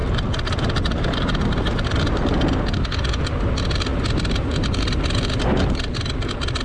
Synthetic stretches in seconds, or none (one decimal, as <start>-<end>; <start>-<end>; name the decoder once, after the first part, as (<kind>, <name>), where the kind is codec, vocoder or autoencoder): none